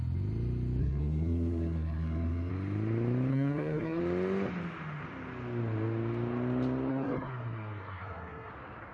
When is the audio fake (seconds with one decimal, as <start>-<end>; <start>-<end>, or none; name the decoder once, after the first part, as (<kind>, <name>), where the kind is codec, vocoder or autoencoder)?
0.8-2.5 (codec, SNAC); 3.3-4.0; 6.9-8.5